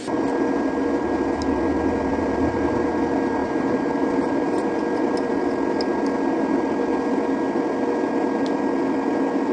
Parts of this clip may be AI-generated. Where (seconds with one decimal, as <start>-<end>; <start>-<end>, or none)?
2.1-2.9; 3.4-4.8